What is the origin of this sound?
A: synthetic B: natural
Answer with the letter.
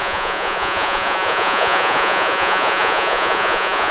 A